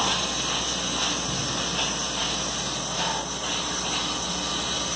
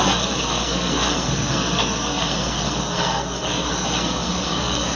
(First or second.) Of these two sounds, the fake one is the second